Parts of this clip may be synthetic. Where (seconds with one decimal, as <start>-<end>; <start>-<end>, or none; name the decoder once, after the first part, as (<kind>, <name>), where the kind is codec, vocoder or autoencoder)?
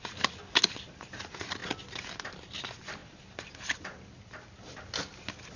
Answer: none